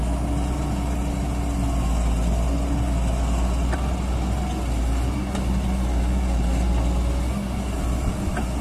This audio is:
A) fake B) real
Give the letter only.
B